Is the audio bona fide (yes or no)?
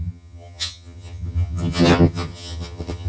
no